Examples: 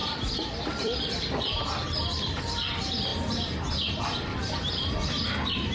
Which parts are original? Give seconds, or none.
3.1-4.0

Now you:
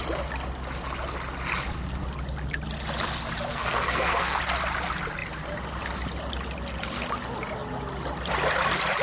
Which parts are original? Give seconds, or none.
0.0-3.5; 4.4-9.0

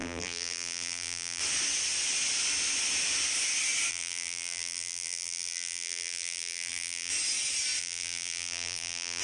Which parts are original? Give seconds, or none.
1.4-3.9; 7.1-7.8

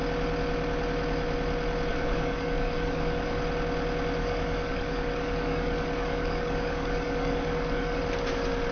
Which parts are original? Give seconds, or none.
0.0-1.9; 3.4-4.2; 8.0-8.7

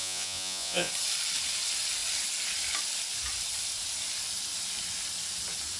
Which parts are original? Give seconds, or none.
0.9-5.8

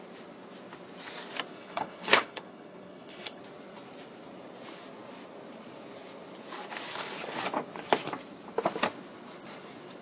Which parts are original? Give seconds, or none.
0.0-1.5; 3.4-10.0

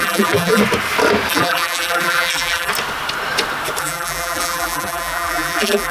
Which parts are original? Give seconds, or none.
0.6-1.3; 2.7-3.8

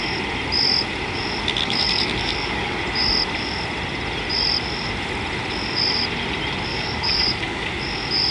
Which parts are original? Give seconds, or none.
0.0-1.6; 2.8-6.7; 7.7-8.3